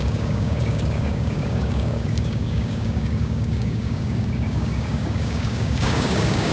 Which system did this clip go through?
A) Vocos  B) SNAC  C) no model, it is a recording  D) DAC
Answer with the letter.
D